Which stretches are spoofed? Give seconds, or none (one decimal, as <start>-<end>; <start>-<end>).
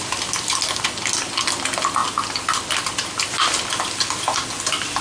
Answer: none